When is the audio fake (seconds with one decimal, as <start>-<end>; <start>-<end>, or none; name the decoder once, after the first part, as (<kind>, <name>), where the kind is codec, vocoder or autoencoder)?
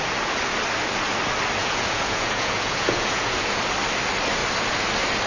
1.6-3.6 (vocoder, Vocos)